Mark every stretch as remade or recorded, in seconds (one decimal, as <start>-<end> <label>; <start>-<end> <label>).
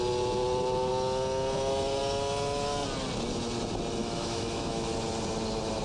0.0-4.0 recorded; 4.0-4.9 remade; 4.9-5.8 recorded